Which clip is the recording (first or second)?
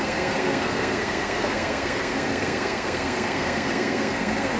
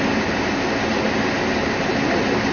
second